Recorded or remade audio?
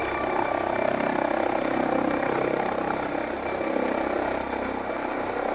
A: recorded